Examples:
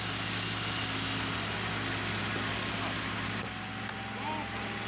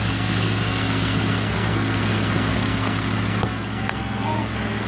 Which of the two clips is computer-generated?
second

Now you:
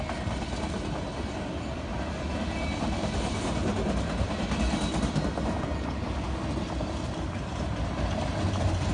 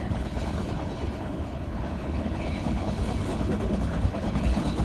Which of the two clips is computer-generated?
second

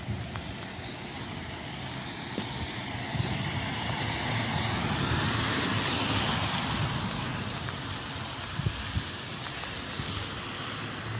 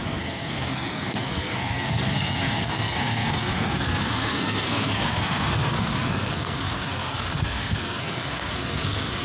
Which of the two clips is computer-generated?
second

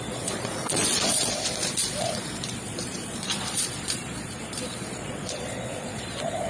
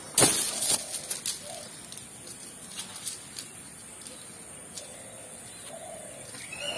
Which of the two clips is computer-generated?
first